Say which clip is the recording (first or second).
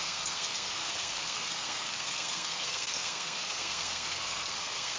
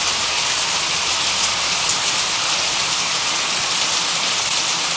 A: second